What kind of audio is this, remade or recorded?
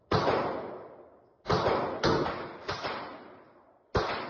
recorded